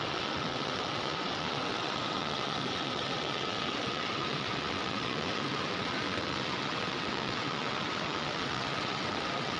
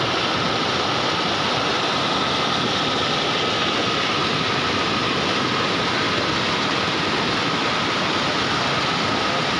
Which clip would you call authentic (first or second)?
second